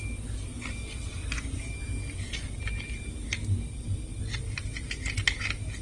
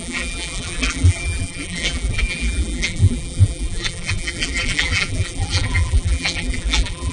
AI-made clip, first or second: second